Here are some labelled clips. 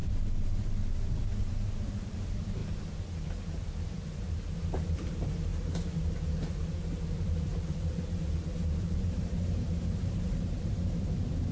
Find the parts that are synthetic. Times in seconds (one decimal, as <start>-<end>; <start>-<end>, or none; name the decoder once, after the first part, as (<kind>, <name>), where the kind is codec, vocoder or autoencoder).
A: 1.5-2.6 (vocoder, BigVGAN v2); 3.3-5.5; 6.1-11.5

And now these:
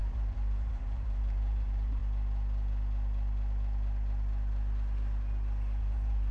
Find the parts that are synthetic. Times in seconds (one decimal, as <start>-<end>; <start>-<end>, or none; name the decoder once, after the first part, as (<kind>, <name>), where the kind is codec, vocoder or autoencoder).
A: 0.0-2.0 (vocoder, BigVGAN v2); 5.8-6.3

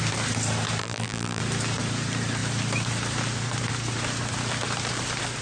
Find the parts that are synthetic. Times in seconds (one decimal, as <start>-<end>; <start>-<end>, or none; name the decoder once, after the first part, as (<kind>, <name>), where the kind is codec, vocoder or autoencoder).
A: 0.8-1.4 (vocoder, BigVGAN v2)